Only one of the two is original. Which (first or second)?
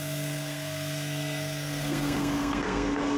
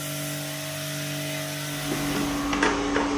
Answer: second